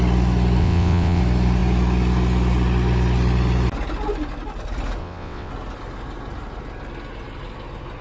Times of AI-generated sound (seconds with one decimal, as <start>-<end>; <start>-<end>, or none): 0.6-1.2; 5.0-5.5